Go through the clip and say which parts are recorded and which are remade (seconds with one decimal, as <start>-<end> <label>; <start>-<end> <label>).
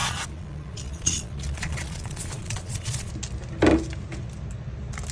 0.0-3.1 remade; 3.1-5.1 recorded